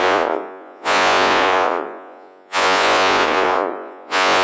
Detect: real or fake fake